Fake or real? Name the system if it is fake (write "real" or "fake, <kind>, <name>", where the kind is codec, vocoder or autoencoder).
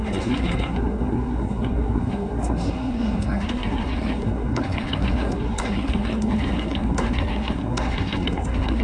fake, codec, SNAC